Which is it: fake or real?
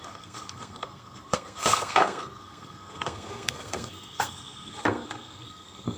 fake